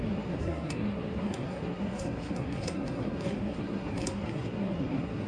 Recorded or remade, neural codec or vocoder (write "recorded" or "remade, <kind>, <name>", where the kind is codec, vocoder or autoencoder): remade, codec, SNAC